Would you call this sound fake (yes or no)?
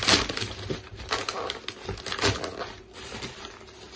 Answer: no